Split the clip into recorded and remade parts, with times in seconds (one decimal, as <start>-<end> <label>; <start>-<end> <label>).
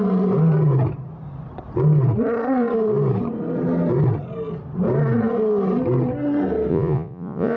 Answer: 0.0-6.7 recorded; 6.7-7.6 remade